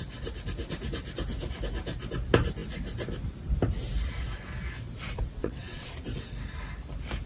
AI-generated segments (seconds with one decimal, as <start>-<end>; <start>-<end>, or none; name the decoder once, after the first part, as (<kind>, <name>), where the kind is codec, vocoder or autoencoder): 5.4-5.9 (vocoder, WaveNeXt)